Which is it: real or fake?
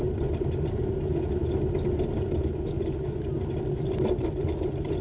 real